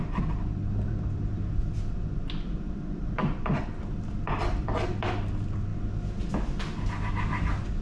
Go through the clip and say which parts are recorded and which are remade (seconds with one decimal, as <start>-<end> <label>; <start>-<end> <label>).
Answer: 0.0-5.7 remade; 5.7-6.3 recorded; 6.3-7.8 remade